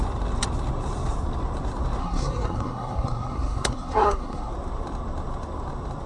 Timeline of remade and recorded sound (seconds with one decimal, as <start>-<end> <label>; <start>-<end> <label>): 0.0-2.0 recorded; 2.0-4.5 remade; 4.5-6.1 recorded